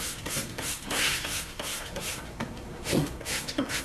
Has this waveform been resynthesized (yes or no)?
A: yes